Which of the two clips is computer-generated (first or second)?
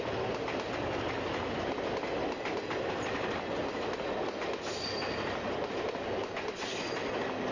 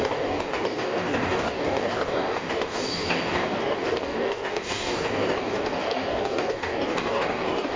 second